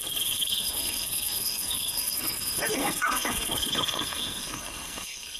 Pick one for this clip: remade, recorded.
remade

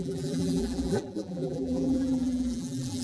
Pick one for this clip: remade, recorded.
remade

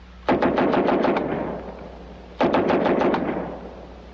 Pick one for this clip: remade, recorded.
recorded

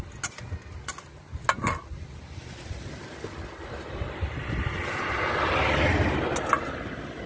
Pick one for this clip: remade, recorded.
recorded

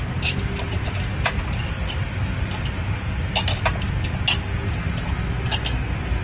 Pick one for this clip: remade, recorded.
recorded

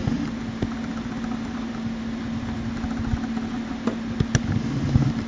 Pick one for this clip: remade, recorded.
recorded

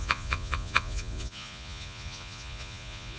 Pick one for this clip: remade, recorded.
remade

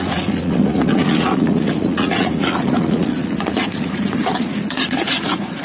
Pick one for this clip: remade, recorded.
remade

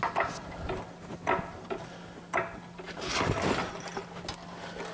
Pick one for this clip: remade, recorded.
recorded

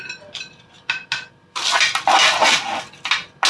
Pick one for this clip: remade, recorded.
recorded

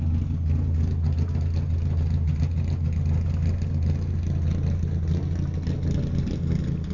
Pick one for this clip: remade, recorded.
recorded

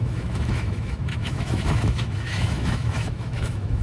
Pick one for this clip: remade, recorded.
remade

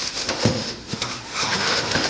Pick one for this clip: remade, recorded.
remade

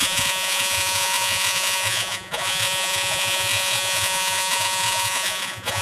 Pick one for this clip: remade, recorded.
remade